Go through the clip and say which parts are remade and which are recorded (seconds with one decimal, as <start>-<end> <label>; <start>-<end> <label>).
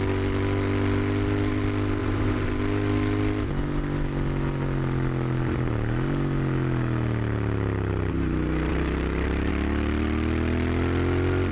0.0-2.0 recorded; 2.0-2.5 remade; 2.5-8.7 recorded; 8.7-9.5 remade; 9.5-11.5 recorded